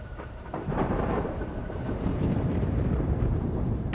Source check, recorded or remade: remade